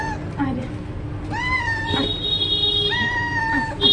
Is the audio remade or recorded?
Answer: recorded